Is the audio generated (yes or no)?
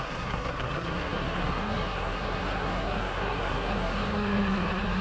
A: yes